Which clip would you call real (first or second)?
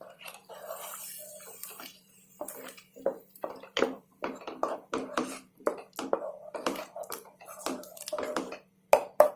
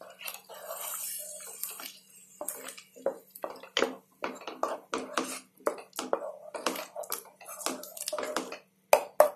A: second